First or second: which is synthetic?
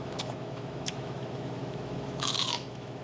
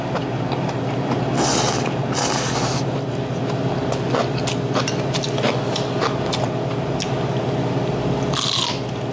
first